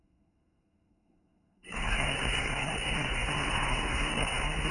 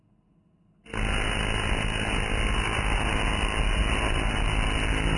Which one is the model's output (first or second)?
first